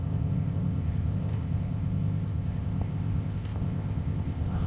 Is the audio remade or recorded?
remade